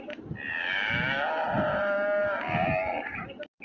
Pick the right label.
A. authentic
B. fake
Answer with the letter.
A